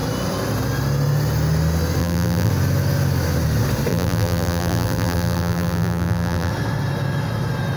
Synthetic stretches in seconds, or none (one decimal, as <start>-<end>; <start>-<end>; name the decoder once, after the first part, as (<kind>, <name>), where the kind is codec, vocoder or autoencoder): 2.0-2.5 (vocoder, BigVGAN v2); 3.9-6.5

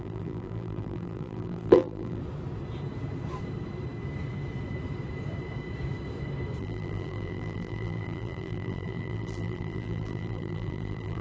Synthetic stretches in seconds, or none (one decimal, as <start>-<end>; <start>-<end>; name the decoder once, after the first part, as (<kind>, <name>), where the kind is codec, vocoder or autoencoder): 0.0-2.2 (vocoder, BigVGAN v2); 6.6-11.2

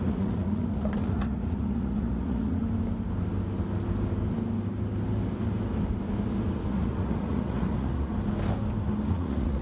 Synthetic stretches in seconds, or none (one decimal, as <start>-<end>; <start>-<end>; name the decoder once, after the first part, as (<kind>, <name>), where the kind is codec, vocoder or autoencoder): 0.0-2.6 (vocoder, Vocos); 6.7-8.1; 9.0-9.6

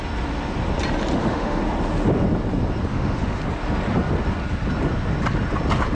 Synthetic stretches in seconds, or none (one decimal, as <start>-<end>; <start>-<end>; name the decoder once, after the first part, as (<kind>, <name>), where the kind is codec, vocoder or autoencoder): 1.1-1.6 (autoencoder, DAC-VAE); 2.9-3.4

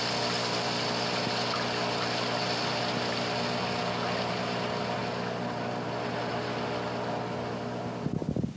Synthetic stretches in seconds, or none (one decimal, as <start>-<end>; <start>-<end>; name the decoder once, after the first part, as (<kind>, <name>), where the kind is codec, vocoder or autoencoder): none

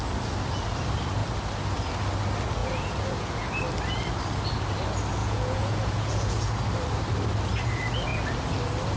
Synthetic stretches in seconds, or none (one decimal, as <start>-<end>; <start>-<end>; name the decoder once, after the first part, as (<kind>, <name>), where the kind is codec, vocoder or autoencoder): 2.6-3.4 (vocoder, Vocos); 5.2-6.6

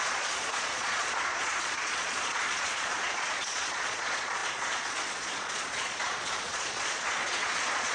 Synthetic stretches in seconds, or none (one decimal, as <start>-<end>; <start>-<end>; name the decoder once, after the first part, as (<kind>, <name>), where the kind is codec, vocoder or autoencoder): 0.0-7.9 (vocoder, Vocos)

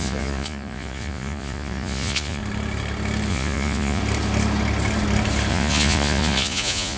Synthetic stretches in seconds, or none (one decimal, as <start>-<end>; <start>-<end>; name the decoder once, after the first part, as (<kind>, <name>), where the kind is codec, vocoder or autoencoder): 0.0-2.4 (vocoder, Vocos); 3.3-4.0; 5.5-7.0